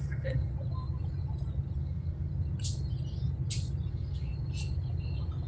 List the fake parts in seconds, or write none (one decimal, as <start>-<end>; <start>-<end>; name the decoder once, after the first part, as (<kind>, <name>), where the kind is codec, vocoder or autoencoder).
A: 0.0-0.5 (codec, SNAC); 1.8-2.3; 3.9-4.3